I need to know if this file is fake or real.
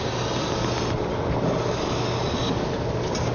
real